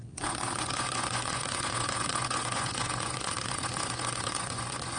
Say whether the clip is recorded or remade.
remade